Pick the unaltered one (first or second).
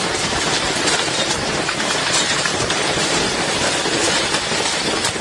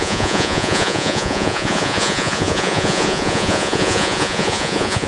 first